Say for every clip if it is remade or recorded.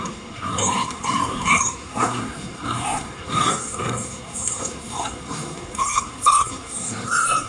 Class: remade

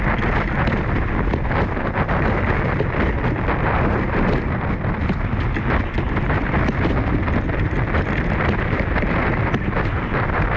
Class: recorded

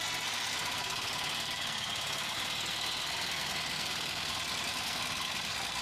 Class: remade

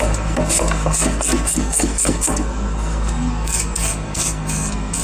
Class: remade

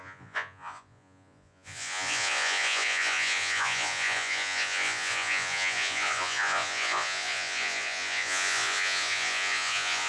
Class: remade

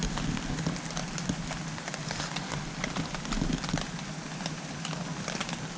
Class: recorded